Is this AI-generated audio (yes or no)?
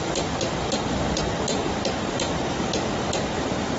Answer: no